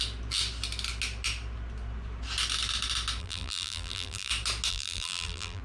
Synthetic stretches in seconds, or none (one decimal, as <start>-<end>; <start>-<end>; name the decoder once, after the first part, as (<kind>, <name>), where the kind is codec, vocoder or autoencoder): 3.2-4.3 (vocoder, BigVGAN v2); 4.7-5.6